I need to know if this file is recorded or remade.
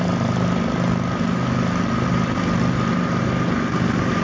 recorded